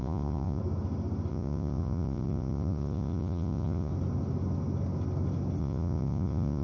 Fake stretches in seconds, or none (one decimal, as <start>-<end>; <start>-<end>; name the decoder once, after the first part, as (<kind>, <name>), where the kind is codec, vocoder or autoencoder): 0.0-0.6 (vocoder, Vocos); 1.3-3.9; 5.6-6.6